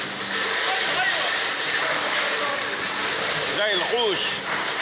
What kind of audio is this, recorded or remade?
recorded